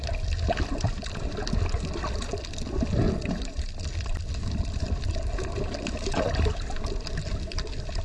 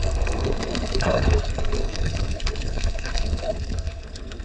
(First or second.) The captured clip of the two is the first